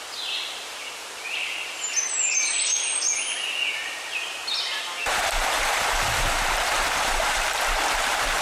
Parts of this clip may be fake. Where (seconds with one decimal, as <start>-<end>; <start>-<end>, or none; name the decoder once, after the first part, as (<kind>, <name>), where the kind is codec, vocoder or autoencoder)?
3.8-7.6 (vocoder, BigVGAN v2)